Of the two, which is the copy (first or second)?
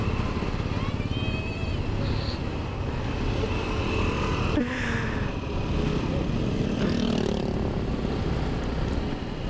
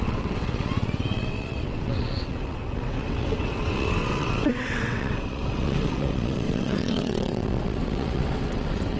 second